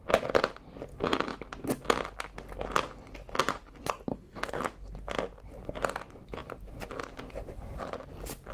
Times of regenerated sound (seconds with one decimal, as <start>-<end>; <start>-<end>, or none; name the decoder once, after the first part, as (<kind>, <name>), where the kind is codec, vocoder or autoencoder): 4.1-4.6 (codec, DAC)